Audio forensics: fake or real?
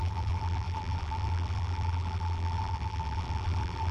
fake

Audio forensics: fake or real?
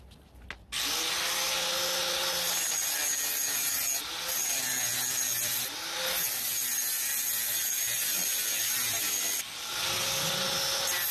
real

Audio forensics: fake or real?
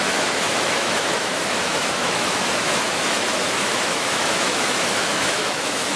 fake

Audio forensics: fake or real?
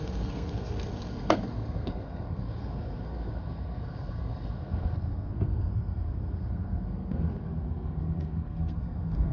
fake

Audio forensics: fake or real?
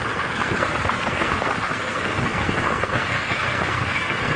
fake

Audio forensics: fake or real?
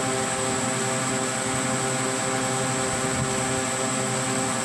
real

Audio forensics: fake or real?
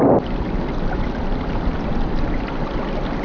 real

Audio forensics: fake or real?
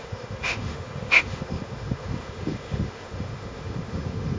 fake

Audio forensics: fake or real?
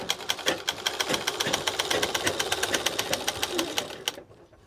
real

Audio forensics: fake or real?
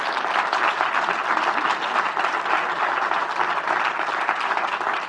real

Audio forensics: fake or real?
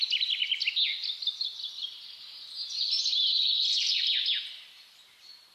real